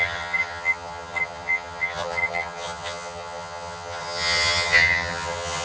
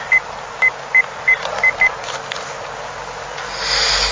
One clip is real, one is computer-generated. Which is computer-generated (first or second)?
first